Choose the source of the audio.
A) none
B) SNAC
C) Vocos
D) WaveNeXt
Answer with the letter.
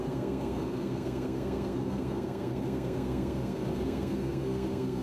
B